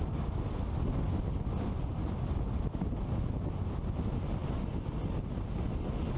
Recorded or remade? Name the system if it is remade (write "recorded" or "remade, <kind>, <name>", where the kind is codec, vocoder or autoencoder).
recorded